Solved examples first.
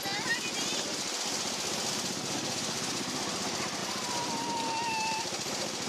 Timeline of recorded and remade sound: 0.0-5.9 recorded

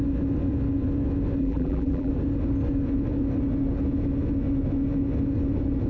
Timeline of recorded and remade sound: 0.0-1.4 recorded; 1.4-2.1 remade; 2.1-5.9 recorded

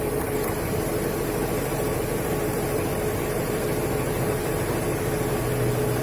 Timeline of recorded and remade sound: 0.0-6.0 recorded

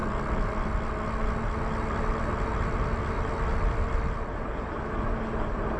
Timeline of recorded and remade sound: 0.0-5.8 recorded

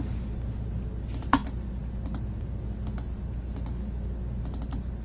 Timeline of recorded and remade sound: 0.0-5.0 recorded

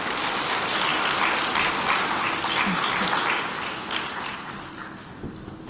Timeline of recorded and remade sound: 0.0-5.7 recorded

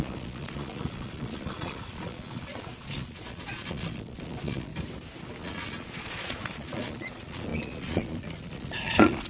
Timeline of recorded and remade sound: 0.0-4.7 remade; 4.7-5.4 recorded; 5.4-9.3 remade